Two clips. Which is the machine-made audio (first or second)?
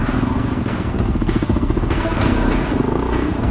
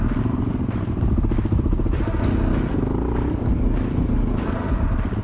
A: first